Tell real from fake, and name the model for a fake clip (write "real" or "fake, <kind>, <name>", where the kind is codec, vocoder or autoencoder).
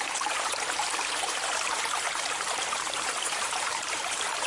fake, vocoder, BigVGAN v2